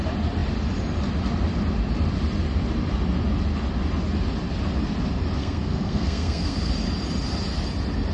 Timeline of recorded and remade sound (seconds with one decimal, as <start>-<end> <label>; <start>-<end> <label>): 0.0-5.4 recorded; 5.4-6.7 remade; 6.7-8.1 recorded